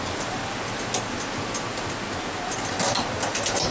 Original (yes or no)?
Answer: yes